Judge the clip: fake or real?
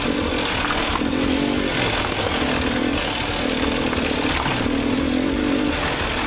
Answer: real